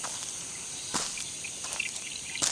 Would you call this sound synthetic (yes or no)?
no